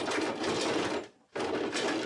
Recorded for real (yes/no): yes